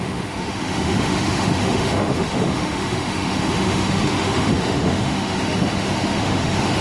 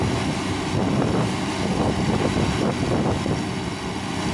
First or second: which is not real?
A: first